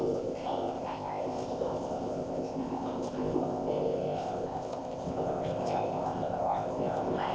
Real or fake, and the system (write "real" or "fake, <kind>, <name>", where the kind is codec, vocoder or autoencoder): fake, codec, ZipCodec